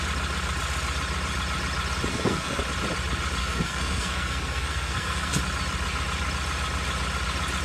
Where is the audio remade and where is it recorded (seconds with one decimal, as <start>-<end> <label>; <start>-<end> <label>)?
0.0-2.1 recorded; 2.1-2.6 remade; 2.6-3.4 recorded; 3.4-5.4 remade; 5.4-7.6 recorded